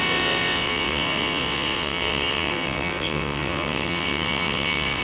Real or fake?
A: fake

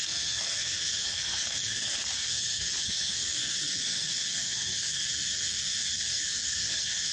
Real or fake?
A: fake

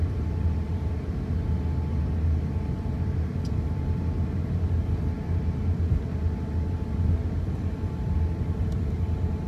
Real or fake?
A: real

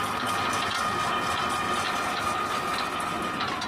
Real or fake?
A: real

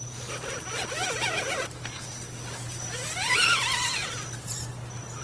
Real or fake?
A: real